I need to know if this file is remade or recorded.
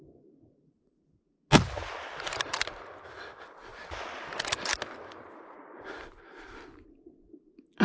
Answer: recorded